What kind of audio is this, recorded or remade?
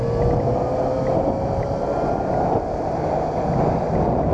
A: recorded